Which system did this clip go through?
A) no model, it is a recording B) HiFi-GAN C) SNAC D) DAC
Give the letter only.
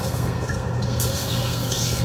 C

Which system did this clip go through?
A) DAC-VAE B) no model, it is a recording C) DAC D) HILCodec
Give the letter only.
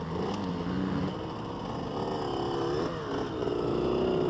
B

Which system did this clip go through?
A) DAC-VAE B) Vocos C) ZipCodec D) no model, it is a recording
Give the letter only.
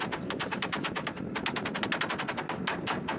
D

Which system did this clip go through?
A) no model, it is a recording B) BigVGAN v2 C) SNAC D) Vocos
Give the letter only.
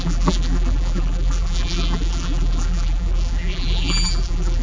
B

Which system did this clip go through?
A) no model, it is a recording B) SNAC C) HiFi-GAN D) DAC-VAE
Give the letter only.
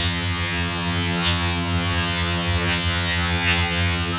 C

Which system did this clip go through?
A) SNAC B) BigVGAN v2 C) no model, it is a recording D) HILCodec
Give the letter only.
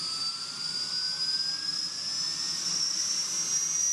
C